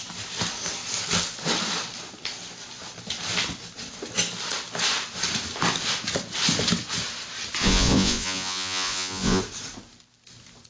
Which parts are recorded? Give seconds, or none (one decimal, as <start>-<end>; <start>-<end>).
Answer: 0.0-7.6; 9.4-10.7